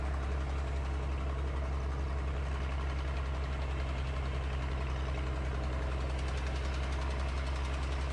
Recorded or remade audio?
recorded